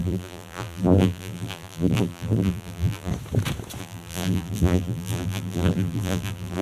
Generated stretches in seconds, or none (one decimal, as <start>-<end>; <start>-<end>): 0.0-3.1; 3.8-6.6